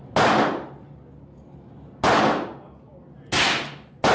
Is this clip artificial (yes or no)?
no